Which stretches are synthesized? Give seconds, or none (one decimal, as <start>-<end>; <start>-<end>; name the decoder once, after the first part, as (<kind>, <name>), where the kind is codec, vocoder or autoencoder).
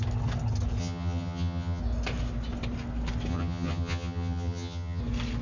0.8-1.8 (vocoder, HiFi-GAN); 3.3-5.0